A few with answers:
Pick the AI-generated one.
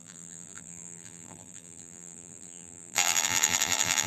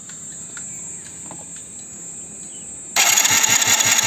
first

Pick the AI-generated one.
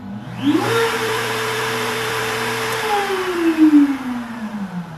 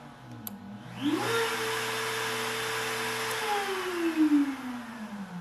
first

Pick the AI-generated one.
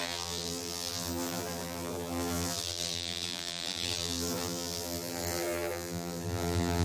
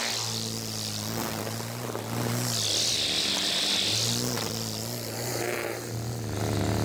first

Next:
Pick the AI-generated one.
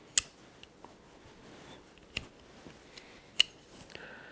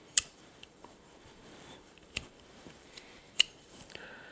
second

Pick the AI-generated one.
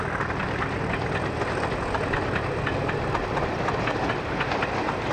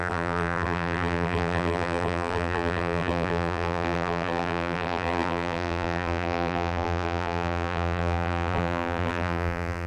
second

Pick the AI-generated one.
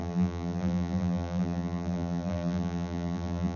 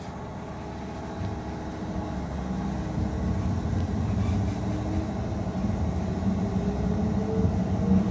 first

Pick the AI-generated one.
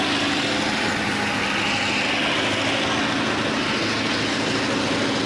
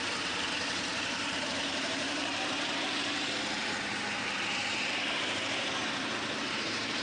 second